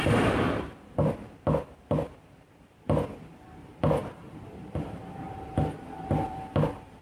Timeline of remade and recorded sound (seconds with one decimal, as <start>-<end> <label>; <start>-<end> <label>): 0.0-7.0 remade